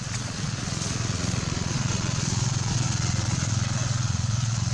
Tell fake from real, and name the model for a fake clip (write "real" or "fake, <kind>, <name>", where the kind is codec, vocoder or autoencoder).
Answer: fake, vocoder, Vocos